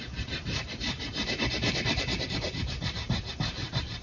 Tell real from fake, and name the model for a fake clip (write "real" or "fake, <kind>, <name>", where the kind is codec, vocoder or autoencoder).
fake, vocoder, BigVGAN v2